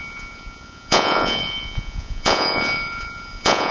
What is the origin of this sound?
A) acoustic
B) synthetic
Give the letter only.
B